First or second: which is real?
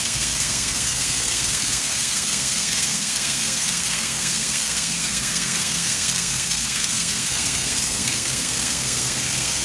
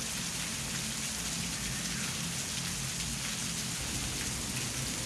second